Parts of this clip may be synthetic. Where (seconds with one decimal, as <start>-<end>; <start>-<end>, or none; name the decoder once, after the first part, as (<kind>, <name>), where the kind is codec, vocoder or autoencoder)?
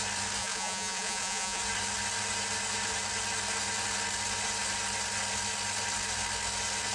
0.4-1.6 (vocoder, Vocos)